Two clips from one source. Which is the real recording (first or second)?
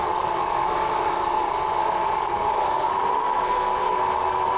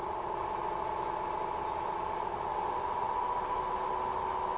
second